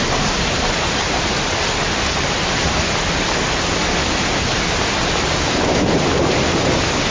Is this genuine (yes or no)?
yes